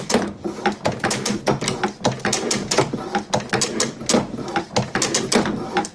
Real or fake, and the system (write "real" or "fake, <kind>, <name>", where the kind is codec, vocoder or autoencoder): real